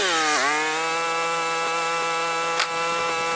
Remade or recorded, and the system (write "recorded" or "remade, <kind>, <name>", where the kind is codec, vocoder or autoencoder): recorded